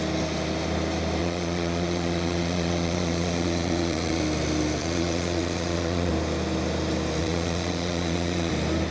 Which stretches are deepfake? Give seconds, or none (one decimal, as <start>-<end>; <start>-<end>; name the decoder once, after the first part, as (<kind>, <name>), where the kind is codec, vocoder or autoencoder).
1.2-4.2 (vocoder, Vocos); 4.8-6.1; 7.2-8.5